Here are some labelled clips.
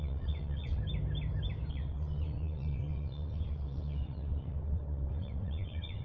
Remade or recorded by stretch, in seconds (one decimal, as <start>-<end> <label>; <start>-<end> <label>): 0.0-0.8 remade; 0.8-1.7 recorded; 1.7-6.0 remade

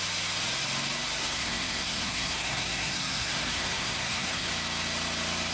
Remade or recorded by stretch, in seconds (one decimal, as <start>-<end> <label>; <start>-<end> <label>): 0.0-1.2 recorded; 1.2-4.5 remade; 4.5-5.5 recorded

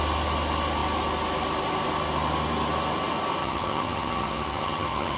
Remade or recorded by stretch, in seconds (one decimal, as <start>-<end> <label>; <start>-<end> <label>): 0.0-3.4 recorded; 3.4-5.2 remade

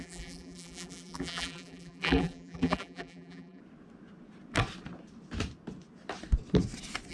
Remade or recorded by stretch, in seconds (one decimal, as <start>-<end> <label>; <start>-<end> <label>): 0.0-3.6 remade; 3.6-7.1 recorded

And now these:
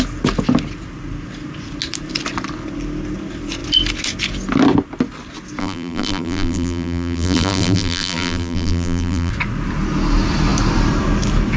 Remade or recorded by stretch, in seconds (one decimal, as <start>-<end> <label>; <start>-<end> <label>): 0.0-5.6 recorded; 5.6-9.3 remade; 9.3-11.6 recorded

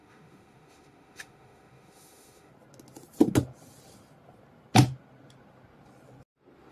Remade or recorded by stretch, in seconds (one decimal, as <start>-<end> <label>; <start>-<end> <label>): 0.0-2.5 remade; 2.5-6.7 recorded